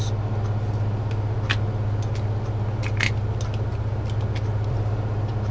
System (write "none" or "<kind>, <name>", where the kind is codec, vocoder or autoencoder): none